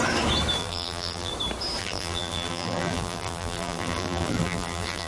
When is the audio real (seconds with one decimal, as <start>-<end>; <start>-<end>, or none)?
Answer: 0.0-0.6; 1.3-1.8